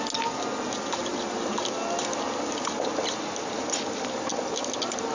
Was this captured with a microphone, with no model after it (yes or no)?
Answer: yes